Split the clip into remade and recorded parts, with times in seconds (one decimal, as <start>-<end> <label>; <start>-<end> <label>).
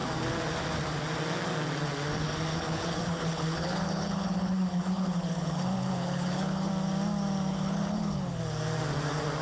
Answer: 0.0-2.5 recorded; 2.5-6.7 remade; 6.7-7.5 recorded; 7.5-8.4 remade; 8.4-9.4 recorded